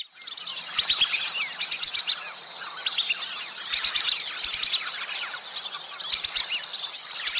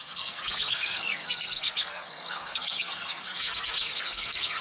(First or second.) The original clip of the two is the first